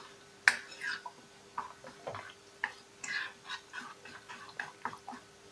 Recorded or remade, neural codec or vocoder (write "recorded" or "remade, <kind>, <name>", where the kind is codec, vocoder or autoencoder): recorded